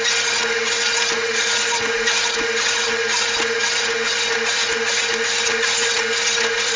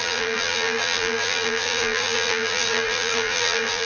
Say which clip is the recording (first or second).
first